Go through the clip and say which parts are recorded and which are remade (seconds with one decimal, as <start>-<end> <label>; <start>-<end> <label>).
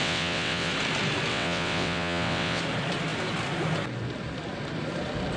0.0-0.7 remade; 0.7-1.3 recorded; 1.3-2.6 remade; 2.6-5.4 recorded